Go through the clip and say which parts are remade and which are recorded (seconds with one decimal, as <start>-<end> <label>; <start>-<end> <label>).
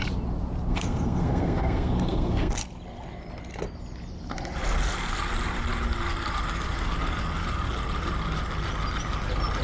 0.0-0.7 recorded; 0.7-2.5 remade; 2.5-9.6 recorded